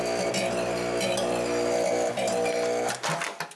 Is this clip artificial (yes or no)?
no